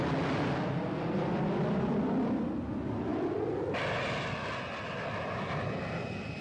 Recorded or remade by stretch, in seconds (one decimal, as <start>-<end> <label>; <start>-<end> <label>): 0.0-6.4 recorded

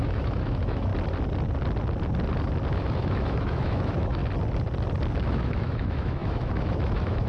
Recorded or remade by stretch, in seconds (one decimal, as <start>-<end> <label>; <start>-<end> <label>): 0.0-0.9 remade; 0.9-2.7 recorded; 2.7-4.2 remade; 4.2-5.1 recorded; 5.1-7.3 remade

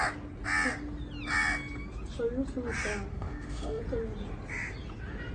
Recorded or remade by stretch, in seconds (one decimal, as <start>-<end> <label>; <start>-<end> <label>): 0.0-3.1 recorded; 3.1-3.8 remade; 3.8-5.3 recorded

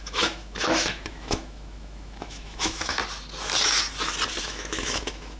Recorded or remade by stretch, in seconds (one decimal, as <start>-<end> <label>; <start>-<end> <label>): 0.0-3.0 remade; 3.0-4.4 recorded; 4.4-5.4 remade

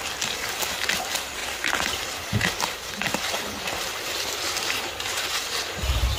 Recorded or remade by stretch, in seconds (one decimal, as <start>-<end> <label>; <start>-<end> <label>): 0.0-6.2 recorded